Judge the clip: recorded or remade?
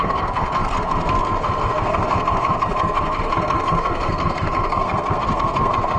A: remade